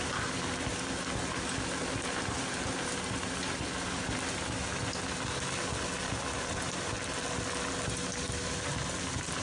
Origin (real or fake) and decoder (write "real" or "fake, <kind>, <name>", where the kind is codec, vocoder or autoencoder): real